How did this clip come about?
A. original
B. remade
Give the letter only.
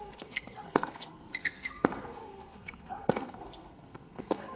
B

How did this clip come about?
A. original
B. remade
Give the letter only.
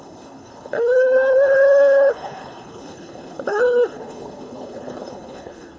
B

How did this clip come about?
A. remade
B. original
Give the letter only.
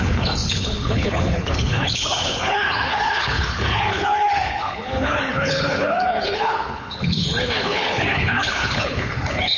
A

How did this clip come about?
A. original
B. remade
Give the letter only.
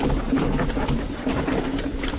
A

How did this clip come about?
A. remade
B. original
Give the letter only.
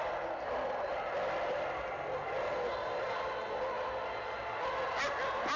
B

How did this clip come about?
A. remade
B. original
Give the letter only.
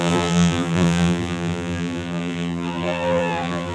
A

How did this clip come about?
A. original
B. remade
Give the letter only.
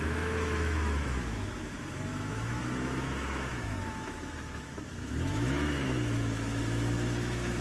B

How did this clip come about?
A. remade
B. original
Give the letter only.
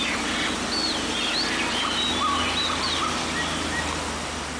B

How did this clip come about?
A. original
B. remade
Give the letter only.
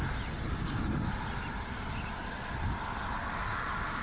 A